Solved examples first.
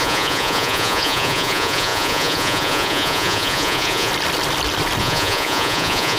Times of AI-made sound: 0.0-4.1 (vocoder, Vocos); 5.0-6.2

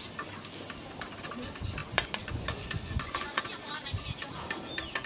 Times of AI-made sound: 1.8-3.4 (vocoder, Vocos)